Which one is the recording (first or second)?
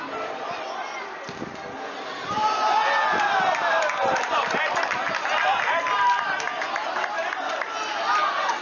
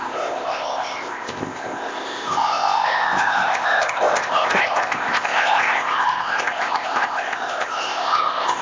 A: first